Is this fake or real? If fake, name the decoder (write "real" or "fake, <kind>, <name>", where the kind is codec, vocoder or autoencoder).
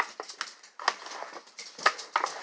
real